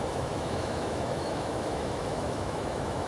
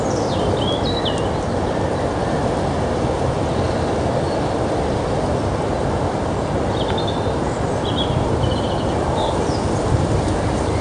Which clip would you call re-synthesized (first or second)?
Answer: first